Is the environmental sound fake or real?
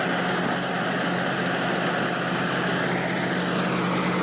real